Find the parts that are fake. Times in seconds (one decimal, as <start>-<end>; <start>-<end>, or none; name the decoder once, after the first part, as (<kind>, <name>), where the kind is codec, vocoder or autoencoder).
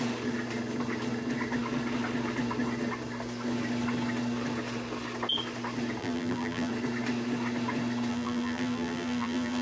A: 6.0-6.7 (vocoder, BigVGAN v2); 8.1-9.6